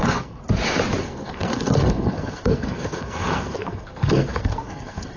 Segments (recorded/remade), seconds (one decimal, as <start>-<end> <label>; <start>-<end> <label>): 0.0-0.4 remade; 0.4-1.0 recorded; 1.0-5.2 remade